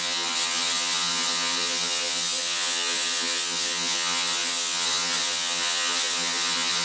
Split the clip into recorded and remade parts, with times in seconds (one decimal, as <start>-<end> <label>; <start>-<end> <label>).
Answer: 0.0-6.8 remade